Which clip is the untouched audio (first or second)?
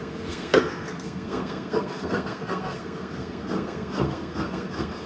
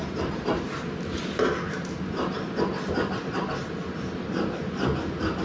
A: second